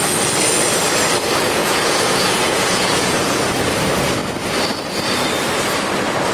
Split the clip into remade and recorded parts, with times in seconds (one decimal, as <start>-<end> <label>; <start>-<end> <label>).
0.0-1.6 recorded; 1.6-3.4 remade; 3.4-6.3 recorded